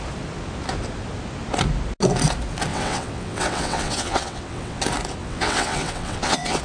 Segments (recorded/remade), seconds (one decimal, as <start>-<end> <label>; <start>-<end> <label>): 0.0-2.7 recorded; 2.7-4.8 remade; 4.8-5.2 recorded; 5.2-6.6 remade